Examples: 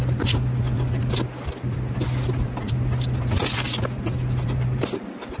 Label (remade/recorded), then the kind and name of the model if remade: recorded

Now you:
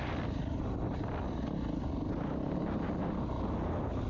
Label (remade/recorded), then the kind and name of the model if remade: recorded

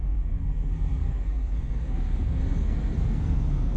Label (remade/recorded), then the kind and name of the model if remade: remade, codec, SNAC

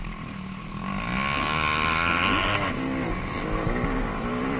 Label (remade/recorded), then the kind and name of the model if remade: recorded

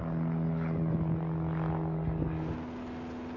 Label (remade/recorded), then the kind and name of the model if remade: recorded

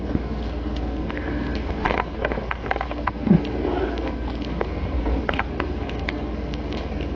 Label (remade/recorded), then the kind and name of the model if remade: remade, codec, SNAC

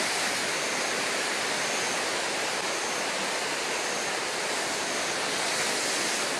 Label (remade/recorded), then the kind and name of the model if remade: recorded